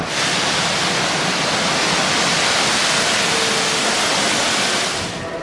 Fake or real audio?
real